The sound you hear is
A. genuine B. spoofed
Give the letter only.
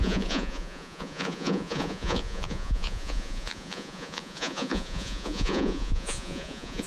B